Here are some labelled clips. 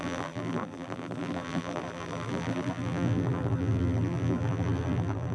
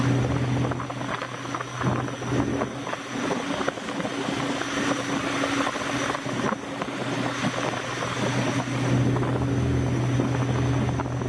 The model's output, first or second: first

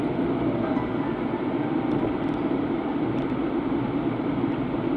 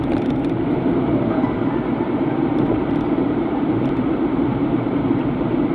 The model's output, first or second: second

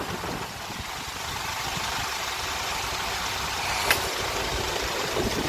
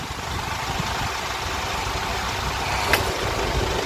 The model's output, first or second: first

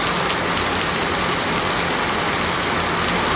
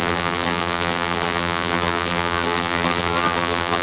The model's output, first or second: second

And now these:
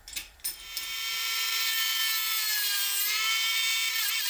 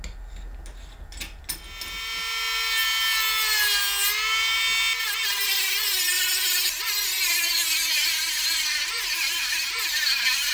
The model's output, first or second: first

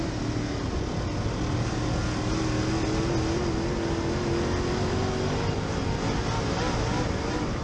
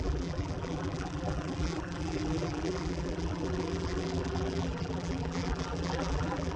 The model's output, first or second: second